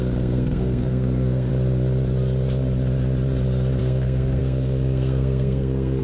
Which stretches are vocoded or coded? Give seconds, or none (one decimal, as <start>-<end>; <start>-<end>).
0.0-1.5; 3.8-6.0